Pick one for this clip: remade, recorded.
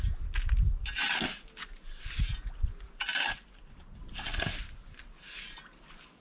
recorded